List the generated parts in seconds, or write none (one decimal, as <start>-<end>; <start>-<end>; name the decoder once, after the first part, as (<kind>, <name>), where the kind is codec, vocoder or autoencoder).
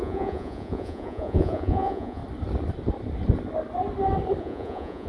0.0-2.2 (vocoder, Vocos); 4.4-5.1